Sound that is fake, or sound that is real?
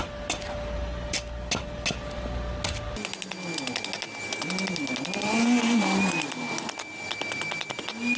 real